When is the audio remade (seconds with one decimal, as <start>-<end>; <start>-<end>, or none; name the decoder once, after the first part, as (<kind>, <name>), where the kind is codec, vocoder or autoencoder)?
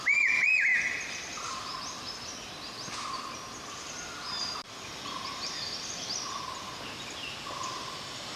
none